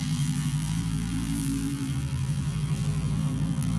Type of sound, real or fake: fake